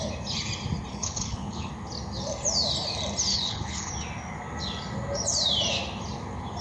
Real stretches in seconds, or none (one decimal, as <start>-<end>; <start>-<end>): 0.0-0.9; 1.7-3.3; 3.9-6.6